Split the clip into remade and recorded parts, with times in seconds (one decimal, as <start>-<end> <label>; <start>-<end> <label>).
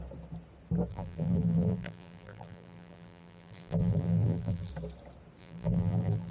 0.0-0.9 recorded; 0.9-4.7 remade; 4.7-5.4 recorded; 5.4-6.3 remade